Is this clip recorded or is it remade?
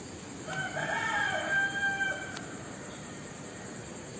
remade